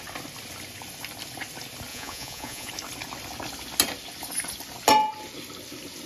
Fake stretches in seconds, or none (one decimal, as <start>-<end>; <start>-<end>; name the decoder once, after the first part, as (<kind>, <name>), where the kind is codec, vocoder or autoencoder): 1.9-2.7 (vocoder, Vocos)